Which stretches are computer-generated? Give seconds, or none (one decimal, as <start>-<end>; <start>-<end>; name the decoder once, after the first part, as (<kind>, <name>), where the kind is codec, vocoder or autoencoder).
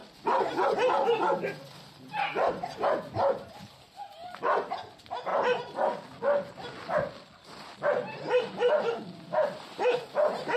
none